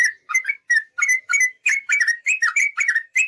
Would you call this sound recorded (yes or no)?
no